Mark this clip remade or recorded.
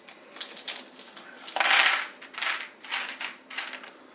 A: recorded